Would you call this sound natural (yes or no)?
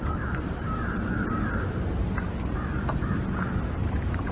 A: no